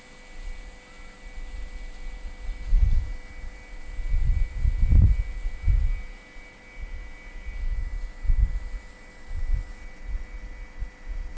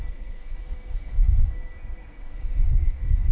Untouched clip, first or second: first